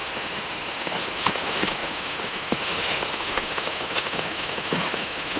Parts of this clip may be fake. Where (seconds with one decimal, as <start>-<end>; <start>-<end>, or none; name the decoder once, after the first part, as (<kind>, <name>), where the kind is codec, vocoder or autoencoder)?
0.0-5.4 (autoencoder, DAC-VAE)